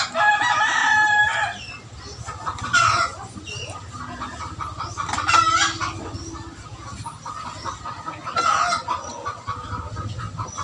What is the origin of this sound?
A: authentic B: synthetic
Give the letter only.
A